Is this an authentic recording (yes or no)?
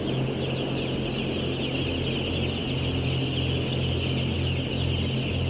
yes